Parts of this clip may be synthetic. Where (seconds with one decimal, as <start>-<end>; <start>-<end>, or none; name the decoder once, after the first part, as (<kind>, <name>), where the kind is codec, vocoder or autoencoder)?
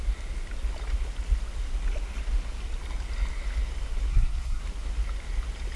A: 4.1-4.6 (codec, SNAC)